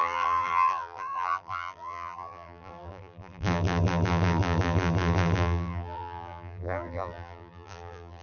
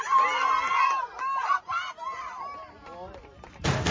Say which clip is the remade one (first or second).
first